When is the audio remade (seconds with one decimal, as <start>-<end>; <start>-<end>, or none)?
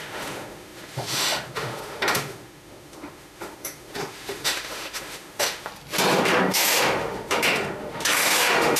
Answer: 0.0-5.7; 6.2-8.8